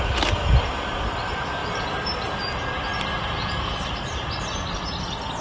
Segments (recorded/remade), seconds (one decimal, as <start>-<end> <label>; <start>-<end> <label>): 0.0-1.6 recorded; 1.6-2.5 remade; 2.5-3.7 recorded; 3.7-4.3 remade; 4.3-5.4 recorded